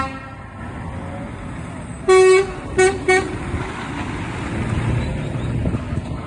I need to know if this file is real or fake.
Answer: real